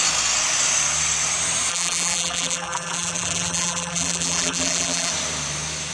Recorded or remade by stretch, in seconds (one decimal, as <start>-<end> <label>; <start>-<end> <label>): 0.0-1.7 recorded; 1.7-5.1 remade; 5.1-5.9 recorded